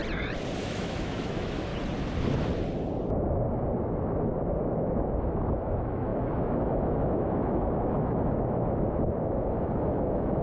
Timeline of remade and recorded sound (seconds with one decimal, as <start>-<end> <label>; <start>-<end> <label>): 0.0-0.6 recorded; 0.6-1.7 remade; 1.7-5.2 recorded; 5.2-10.4 remade

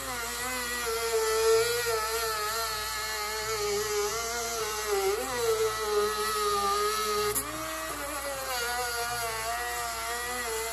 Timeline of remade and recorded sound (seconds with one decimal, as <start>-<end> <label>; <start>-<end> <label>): 0.0-10.7 recorded